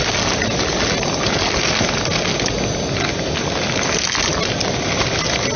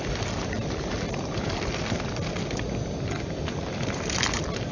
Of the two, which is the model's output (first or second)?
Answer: second